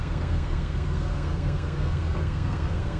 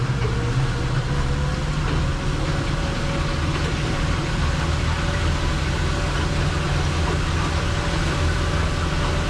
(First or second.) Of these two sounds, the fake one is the first